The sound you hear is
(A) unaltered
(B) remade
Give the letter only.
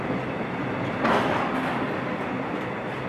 B